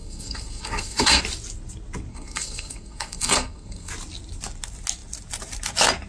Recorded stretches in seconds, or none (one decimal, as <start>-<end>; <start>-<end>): 1.2-2.1; 3.9-6.1